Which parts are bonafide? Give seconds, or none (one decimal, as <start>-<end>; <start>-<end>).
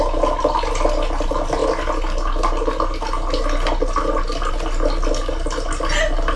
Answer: 0.0-6.4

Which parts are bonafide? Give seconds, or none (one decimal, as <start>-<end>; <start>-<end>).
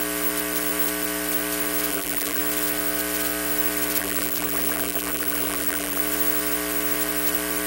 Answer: 0.0-1.9; 2.4-4.0; 6.0-7.7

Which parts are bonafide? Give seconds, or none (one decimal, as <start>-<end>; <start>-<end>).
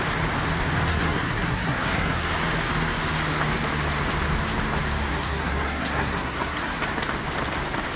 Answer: 0.0-0.9; 2.3-5.1; 6.8-8.0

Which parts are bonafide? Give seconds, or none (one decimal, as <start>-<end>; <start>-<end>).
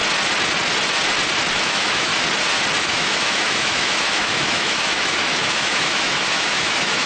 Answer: 0.0-1.5; 2.1-2.8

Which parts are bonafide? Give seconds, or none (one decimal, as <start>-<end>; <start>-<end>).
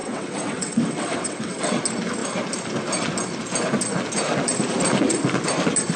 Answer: 1.8-6.0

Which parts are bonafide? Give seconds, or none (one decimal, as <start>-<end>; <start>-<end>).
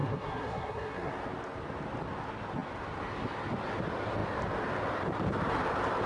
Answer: 1.1-6.1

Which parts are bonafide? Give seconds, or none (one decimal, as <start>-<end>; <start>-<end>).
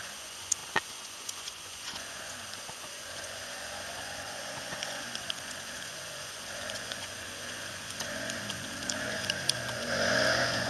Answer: none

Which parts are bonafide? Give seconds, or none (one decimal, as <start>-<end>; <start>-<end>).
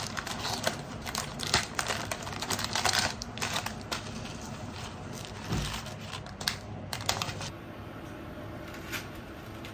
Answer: 7.3-8.9